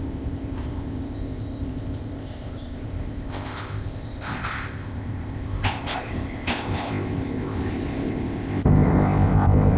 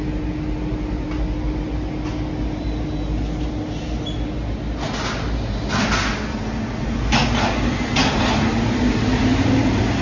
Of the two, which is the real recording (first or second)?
second